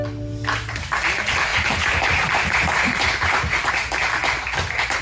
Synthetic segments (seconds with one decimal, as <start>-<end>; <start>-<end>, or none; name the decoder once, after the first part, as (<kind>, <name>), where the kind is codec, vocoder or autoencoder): 1.5-3.7 (vocoder, BigVGAN v2)